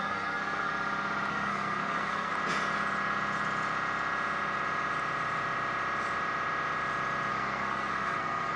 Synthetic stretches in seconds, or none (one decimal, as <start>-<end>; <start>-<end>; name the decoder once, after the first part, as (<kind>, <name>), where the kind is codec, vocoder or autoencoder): 0.0-0.7 (codec, SNAC); 1.3-2.3; 7.3-8.6